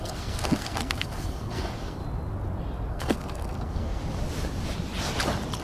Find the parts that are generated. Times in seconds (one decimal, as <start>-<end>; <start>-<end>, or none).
0.0-2.0; 2.9-4.0